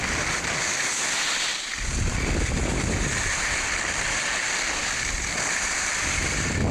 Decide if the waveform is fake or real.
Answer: real